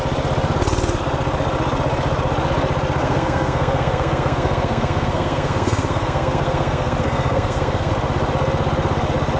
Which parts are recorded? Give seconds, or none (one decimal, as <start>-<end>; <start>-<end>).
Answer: 0.0-3.0; 7.9-9.4